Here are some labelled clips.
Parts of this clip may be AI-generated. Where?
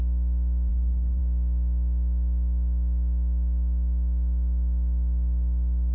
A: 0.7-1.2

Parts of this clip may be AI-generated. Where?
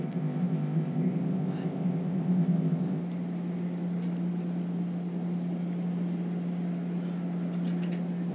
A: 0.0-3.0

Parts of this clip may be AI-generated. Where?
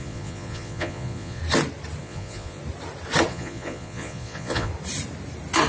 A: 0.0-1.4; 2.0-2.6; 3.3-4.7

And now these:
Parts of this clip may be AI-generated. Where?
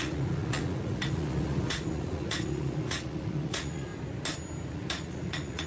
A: 0.0-3.9; 4.7-5.7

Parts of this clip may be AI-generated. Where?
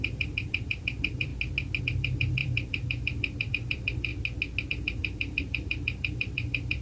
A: 0.0-1.3; 1.8-4.1; 4.7-6.8